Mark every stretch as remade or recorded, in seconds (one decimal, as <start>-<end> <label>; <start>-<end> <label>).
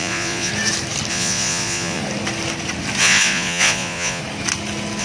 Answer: 0.0-0.5 remade; 0.5-1.1 recorded; 1.1-2.0 remade; 2.0-3.0 recorded; 3.0-4.2 remade; 4.2-5.0 recorded